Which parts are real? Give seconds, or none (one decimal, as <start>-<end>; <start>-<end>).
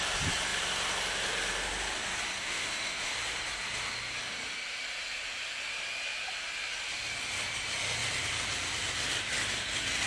0.0-2.4; 3.1-10.1